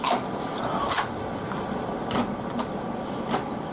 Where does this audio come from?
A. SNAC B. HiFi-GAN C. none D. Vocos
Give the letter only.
C